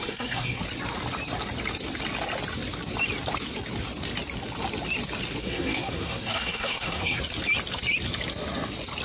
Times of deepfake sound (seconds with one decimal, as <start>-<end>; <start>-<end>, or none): 0.0-0.6; 5.4-7.2